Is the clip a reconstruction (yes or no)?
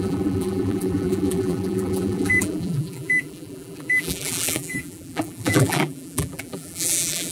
yes